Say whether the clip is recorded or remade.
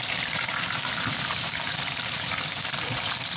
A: recorded